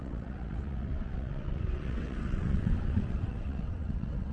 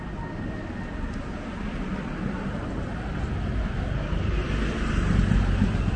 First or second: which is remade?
first